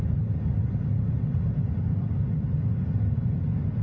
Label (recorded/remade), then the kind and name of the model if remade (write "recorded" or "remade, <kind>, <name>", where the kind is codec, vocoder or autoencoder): recorded